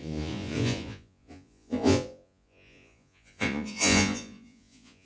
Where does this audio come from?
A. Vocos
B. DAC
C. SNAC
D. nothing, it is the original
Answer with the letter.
A